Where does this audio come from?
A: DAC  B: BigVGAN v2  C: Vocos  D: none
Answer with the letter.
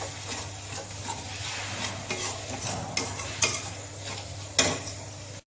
D